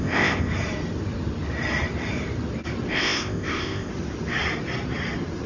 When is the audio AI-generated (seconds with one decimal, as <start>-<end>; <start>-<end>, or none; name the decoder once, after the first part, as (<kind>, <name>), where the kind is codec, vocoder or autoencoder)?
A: 0.0-0.5 (codec, ZipCodec); 2.9-3.9